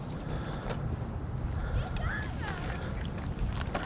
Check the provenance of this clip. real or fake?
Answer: real